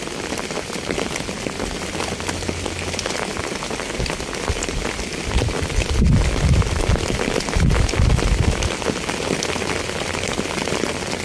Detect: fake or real real